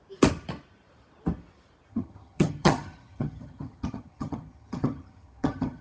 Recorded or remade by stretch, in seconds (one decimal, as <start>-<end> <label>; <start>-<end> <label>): 0.0-1.9 recorded; 1.9-5.8 remade